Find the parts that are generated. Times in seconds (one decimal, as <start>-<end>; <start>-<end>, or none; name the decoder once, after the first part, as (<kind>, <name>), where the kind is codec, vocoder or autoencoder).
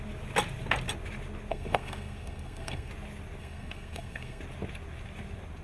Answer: 1.5-2.9 (codec, SNAC); 3.4-4.4